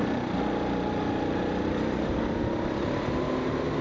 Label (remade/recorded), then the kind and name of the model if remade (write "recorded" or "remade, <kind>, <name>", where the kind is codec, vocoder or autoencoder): recorded